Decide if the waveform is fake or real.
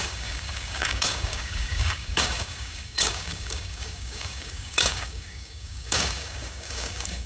fake